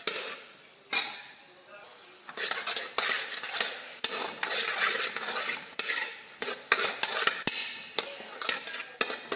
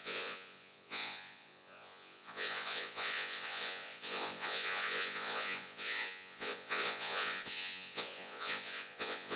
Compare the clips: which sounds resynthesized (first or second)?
second